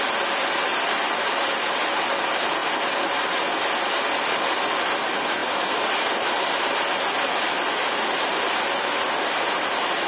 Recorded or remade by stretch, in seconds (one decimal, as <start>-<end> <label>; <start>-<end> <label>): 0.0-10.1 recorded